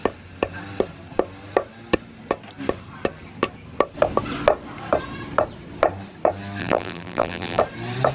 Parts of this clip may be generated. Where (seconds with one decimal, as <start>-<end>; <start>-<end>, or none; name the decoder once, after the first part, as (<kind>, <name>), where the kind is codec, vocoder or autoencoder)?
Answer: 6.6-7.6 (vocoder, BigVGAN v2)